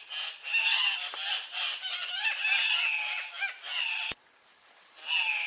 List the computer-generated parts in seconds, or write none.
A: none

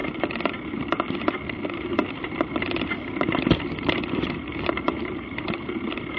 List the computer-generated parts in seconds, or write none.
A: 0.0-1.3 (vocoder, BigVGAN v2); 1.9-5.6